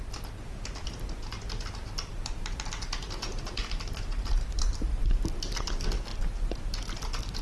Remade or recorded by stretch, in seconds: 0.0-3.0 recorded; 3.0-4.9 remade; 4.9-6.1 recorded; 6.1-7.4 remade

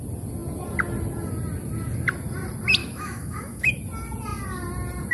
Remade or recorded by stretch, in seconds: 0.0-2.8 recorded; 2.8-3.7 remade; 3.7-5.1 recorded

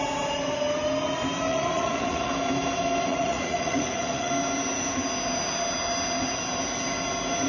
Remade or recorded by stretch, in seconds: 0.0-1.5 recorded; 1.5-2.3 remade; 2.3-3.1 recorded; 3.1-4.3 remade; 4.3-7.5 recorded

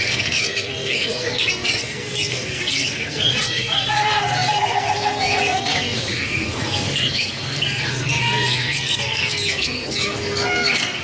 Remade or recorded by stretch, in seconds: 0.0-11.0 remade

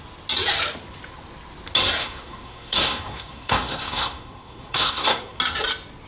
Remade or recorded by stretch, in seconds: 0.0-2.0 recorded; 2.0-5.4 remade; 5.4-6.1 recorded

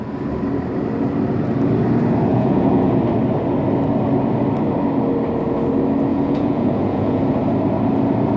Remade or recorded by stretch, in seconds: 0.0-2.3 recorded; 2.3-3.0 remade; 3.0-6.1 recorded; 6.1-7.2 remade; 7.2-8.4 recorded

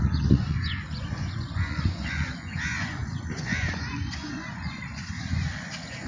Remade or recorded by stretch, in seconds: 0.0-6.1 remade

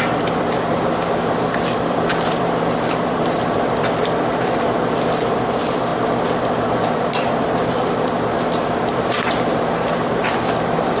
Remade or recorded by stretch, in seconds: 0.0-5.9 remade; 5.9-6.8 recorded; 6.8-11.0 remade